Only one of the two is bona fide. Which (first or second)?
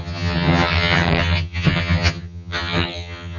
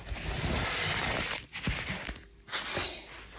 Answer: second